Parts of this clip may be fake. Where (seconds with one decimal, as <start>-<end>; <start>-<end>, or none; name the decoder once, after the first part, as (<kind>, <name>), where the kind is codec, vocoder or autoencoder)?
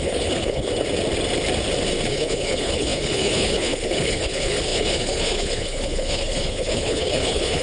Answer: 0.0-0.7 (codec, HILCodec); 2.1-7.6